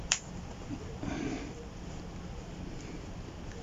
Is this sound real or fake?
fake